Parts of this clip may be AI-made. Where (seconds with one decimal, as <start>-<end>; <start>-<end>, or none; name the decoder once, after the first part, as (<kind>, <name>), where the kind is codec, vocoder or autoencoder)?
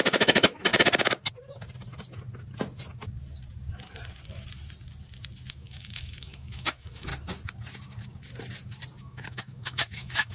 0.0-0.7 (autoencoder, DAC-VAE); 5.5-7.1; 9.0-10.3